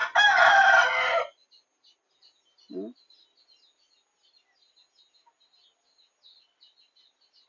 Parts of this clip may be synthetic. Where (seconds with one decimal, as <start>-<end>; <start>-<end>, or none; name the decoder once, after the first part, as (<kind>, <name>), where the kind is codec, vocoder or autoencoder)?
none